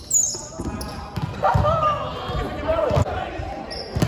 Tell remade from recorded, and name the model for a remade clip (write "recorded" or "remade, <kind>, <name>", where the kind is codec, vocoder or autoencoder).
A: recorded